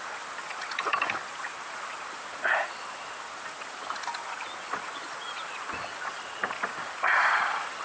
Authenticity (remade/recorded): recorded